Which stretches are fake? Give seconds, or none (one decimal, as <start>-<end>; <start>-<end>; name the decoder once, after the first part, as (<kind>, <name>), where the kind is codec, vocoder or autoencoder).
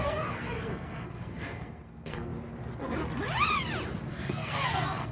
0.0-2.3 (codec, SNAC); 4.1-5.1